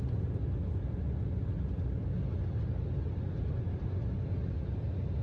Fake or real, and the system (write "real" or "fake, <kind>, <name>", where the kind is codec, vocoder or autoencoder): real